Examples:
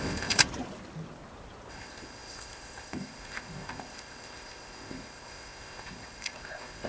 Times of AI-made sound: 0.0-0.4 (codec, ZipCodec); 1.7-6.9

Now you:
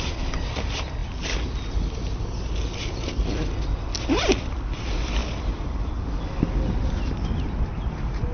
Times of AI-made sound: none

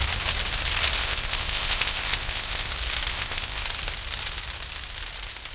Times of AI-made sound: 1.0-2.7 (codec, ZipCodec); 3.1-3.6

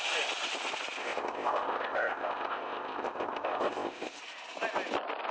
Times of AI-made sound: 1.0-4.2 (codec, ZipCodec)